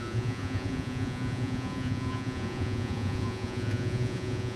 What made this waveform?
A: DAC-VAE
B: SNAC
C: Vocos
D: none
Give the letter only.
C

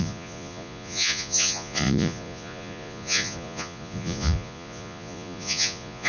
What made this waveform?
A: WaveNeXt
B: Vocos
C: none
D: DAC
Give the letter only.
B